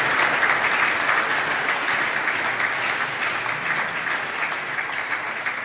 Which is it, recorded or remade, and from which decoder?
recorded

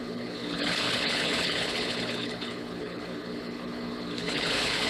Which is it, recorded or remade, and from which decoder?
remade, codec, HILCodec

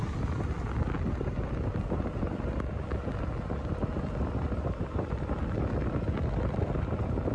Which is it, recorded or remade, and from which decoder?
recorded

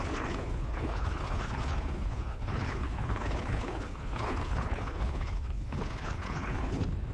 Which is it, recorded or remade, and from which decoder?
remade, codec, HILCodec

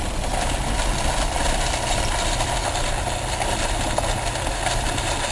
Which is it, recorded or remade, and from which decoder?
recorded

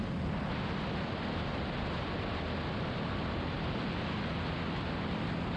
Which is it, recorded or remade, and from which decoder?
recorded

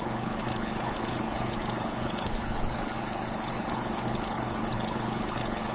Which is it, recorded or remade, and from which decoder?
remade, codec, HILCodec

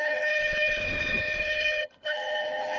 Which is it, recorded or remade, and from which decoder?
remade, codec, HILCodec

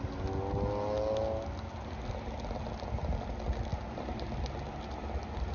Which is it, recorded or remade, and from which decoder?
recorded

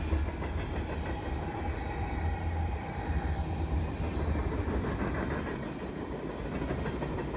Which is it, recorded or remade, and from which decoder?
recorded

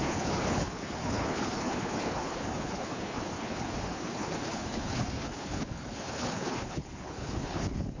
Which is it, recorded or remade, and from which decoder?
remade, codec, HILCodec